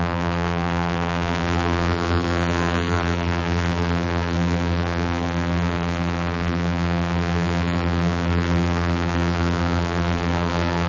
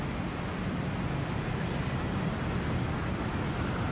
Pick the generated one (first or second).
first